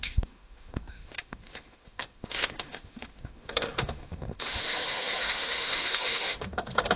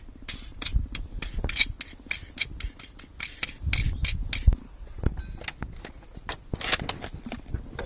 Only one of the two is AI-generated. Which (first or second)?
first